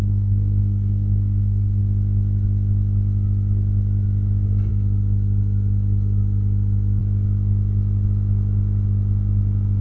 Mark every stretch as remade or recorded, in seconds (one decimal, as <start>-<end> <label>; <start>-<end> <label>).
0.0-1.8 remade; 1.8-9.8 recorded